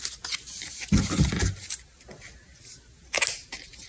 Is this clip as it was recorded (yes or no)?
yes